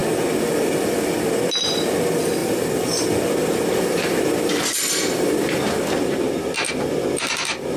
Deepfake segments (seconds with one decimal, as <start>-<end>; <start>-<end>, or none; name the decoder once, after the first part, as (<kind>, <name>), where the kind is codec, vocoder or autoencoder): 0.5-7.8 (vocoder, BigVGAN v2)